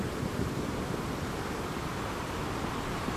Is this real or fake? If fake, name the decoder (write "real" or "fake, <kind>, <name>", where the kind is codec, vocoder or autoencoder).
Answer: fake, vocoder, BigVGAN v2